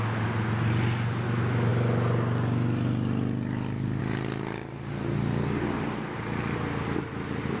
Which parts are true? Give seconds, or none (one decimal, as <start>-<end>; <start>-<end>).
0.0-7.6